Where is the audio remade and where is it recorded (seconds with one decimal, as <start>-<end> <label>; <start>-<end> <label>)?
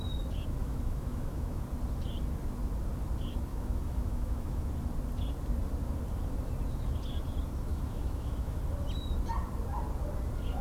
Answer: 0.0-0.6 recorded; 0.6-1.6 remade; 1.6-3.5 recorded; 3.5-4.7 remade; 4.7-7.7 recorded; 7.7-8.6 remade; 8.6-10.6 recorded